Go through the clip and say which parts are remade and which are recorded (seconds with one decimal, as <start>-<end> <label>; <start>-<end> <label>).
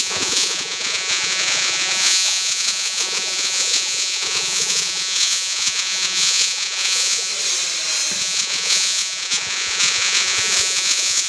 0.0-7.3 remade; 7.3-8.2 recorded; 8.2-11.3 remade